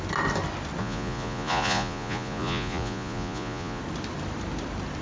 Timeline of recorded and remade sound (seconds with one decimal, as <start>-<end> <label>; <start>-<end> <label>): 0.0-0.8 recorded; 0.8-3.8 remade; 3.8-5.0 recorded